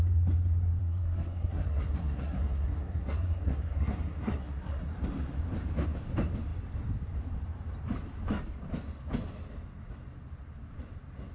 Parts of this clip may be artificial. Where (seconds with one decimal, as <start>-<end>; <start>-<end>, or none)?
0.8-4.9